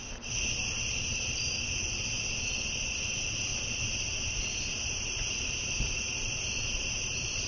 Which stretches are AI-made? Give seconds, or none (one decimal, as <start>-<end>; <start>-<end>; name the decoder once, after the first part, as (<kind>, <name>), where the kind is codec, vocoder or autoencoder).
2.8-3.5 (vocoder, BigVGAN v2); 4.3-7.5